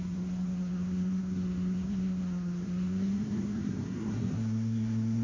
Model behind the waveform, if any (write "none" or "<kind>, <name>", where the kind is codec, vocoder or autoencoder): codec, SNAC